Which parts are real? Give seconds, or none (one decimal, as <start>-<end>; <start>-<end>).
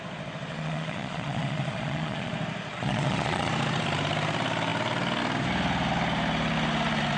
0.0-0.5; 2.3-2.7; 3.5-7.2